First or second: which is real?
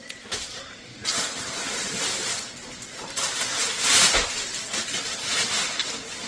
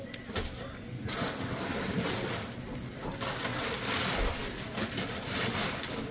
second